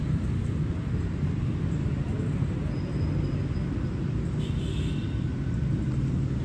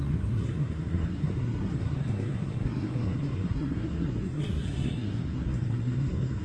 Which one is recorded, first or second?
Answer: first